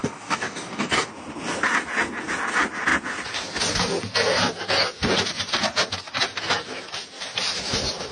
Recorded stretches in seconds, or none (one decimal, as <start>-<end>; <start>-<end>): 1.1-8.1